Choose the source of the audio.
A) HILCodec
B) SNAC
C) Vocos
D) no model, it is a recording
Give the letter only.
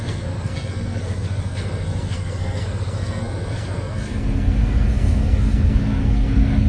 B